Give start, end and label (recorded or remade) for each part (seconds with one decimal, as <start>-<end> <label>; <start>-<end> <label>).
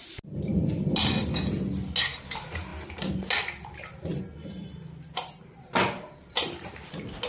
0.0-7.3 recorded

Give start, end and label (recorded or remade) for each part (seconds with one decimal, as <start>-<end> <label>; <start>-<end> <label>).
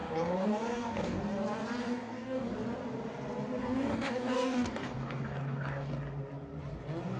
0.0-1.2 remade; 1.2-1.8 recorded; 1.8-2.5 remade; 2.5-3.6 recorded; 3.6-5.9 remade; 5.9-7.2 recorded